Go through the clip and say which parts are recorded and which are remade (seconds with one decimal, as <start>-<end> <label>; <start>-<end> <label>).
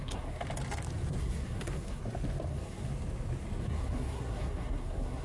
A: 0.0-0.4 remade; 0.4-1.2 recorded; 1.2-2.0 remade; 2.0-2.5 recorded; 2.5-2.9 remade; 2.9-3.6 recorded; 3.6-5.2 remade